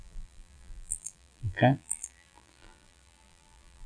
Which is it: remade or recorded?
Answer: remade